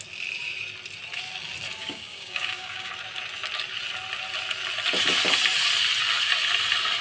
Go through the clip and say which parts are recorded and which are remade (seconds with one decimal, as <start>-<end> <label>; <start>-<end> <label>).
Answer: 0.0-1.8 recorded; 1.8-2.9 remade; 2.9-7.0 recorded